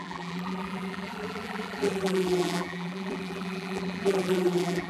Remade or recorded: remade